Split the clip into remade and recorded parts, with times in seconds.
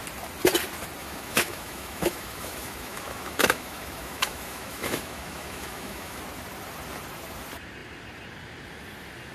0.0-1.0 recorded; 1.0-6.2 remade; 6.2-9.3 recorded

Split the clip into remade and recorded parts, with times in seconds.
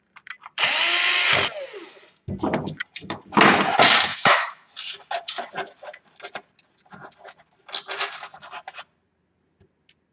0.0-4.1 recorded; 4.1-4.7 remade; 4.7-10.1 recorded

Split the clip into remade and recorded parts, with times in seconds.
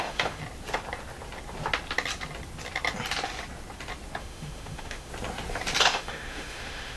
0.0-0.4 remade; 0.4-4.2 recorded; 4.2-5.1 remade; 5.1-5.8 recorded; 5.8-7.0 remade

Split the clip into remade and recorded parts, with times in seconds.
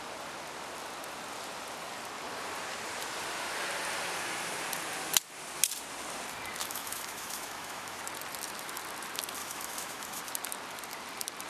0.0-6.6 recorded; 6.6-8.0 remade; 8.0-9.4 recorded; 9.4-10.2 remade; 10.2-11.5 recorded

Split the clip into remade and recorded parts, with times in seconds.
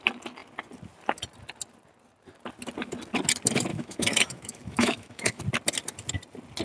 0.0-3.7 recorded; 3.7-5.4 remade; 5.4-6.6 recorded